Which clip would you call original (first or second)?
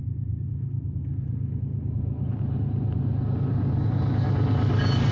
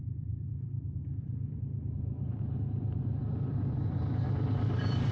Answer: first